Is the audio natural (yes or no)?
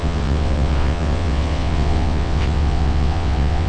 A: no